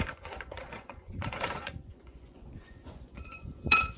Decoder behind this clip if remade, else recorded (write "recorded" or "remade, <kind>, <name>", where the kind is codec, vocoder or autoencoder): remade, vocoder, Vocos